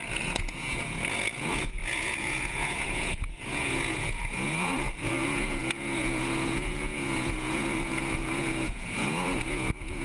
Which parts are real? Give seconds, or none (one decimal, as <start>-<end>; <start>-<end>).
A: none